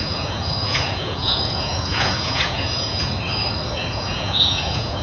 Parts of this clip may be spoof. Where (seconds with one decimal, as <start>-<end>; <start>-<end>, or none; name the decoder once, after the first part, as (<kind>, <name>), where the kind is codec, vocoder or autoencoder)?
0.0-3.1 (vocoder, Vocos); 3.9-5.0